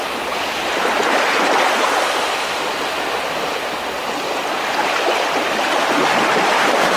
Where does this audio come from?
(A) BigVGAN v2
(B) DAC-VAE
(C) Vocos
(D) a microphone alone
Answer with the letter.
D